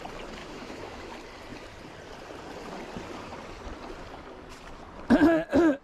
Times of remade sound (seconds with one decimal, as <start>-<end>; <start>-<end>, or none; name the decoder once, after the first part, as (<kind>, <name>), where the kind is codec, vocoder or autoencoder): 0.4-1.1 (autoencoder, DAC-VAE)